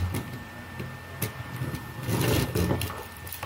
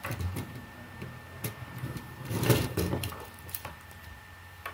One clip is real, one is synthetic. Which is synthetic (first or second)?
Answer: second